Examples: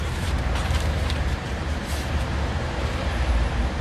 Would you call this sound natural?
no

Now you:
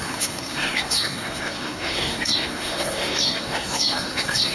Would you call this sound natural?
no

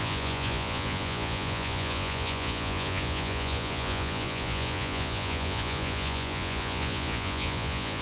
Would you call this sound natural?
no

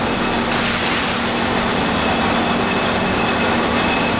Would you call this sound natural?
yes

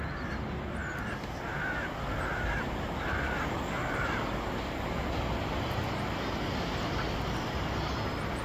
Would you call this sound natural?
yes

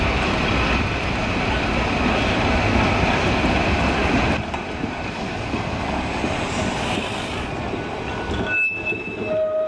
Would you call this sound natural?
yes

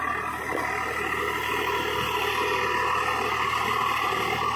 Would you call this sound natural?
yes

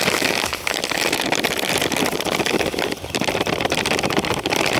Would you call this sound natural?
no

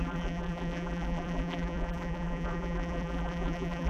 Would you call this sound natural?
no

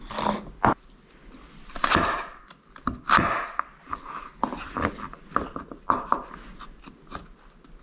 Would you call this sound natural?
yes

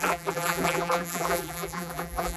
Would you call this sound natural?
no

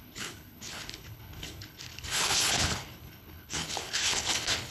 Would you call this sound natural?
no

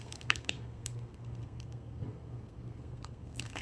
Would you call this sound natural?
no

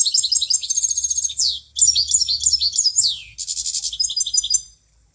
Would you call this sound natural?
yes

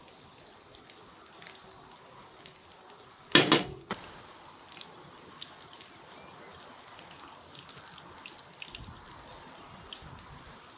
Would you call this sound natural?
yes